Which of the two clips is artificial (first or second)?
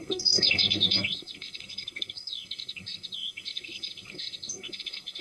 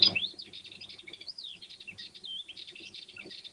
first